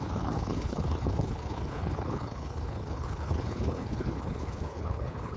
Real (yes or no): no